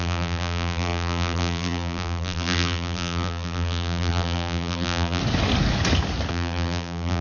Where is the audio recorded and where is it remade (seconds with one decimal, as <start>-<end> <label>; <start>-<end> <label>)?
0.0-5.2 remade; 5.2-6.3 recorded; 6.3-7.2 remade